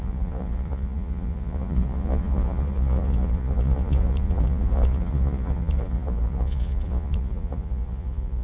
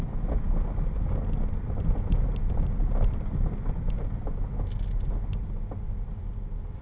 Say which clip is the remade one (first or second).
first